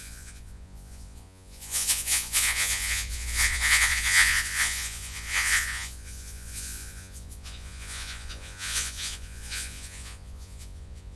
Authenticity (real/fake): fake